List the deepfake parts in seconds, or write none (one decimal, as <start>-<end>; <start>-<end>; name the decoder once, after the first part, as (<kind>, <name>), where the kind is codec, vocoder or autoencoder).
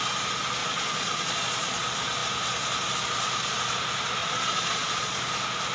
0.6-1.8 (vocoder, Vocos); 4.2-5.3